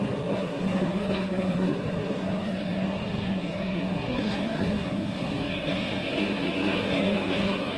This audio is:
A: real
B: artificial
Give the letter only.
B